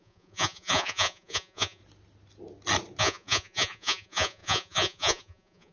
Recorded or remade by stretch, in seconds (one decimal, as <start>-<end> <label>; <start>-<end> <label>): 0.0-1.8 remade; 1.8-3.0 recorded; 3.0-5.7 remade